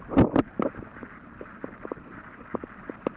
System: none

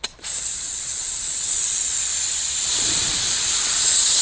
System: vocoder, Vocos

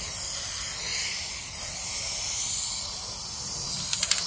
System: vocoder, BigVGAN v2